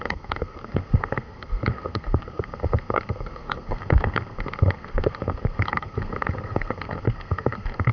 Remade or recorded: remade